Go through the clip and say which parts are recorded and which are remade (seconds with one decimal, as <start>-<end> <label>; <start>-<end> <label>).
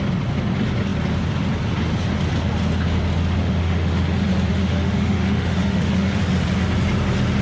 0.0-3.4 recorded; 3.4-4.0 remade; 4.0-4.5 recorded; 4.5-6.2 remade; 6.2-7.4 recorded